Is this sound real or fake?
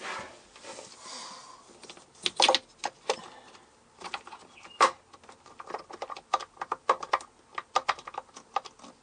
real